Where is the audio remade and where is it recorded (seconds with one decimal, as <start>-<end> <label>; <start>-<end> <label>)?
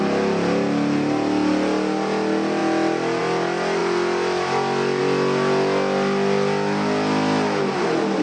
0.0-8.2 recorded